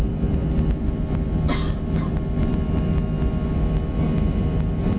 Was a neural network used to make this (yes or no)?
no